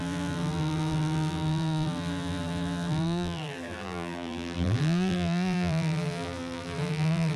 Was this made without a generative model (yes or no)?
no